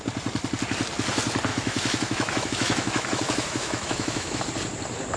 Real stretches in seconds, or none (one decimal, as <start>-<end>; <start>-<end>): 0.0-1.5; 4.4-5.2